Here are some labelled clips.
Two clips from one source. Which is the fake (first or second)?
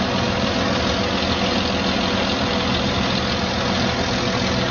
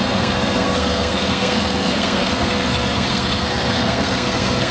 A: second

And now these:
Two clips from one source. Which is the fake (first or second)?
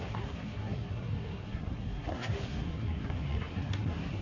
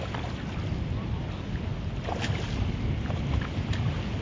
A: first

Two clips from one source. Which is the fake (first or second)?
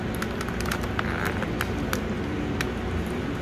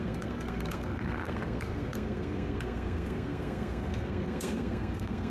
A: second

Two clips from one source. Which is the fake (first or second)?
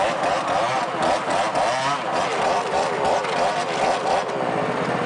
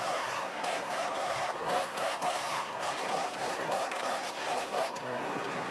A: second